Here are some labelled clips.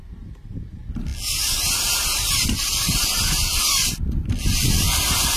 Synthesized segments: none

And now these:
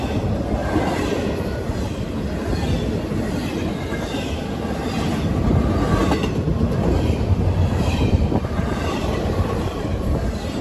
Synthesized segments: 0.6-1.4 (vocoder, BigVGAN v2); 6.5-10.1